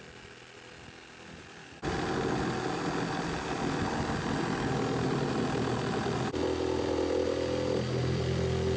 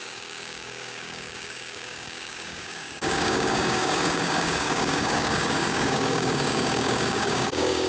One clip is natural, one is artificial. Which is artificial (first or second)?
second